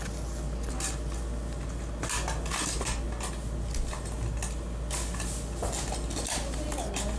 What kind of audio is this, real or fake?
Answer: real